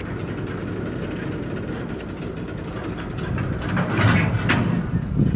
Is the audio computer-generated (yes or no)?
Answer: no